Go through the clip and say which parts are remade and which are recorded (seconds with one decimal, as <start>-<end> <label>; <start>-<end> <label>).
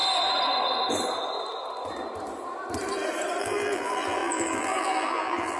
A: 0.0-3.4 recorded; 3.4-5.6 remade